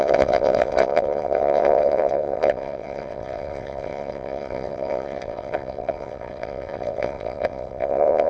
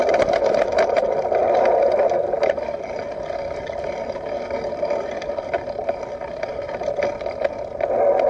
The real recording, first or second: second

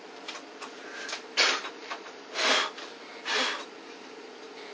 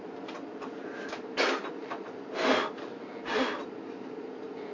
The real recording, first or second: second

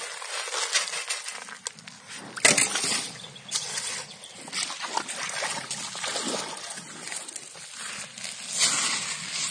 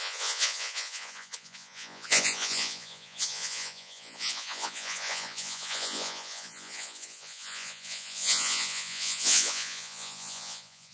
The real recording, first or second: first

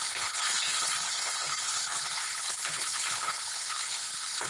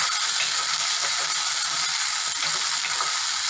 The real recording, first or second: second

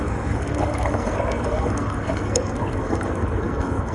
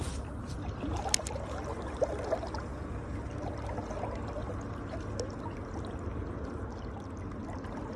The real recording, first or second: second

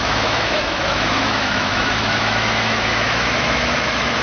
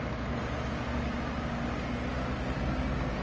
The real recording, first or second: second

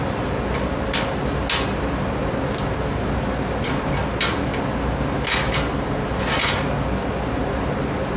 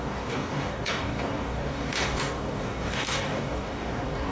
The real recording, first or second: first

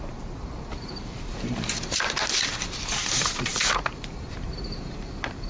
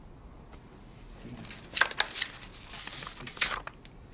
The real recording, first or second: second